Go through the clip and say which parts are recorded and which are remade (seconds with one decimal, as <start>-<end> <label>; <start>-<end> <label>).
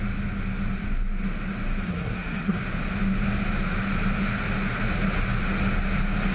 0.0-1.9 recorded; 1.9-2.6 remade; 2.6-6.3 recorded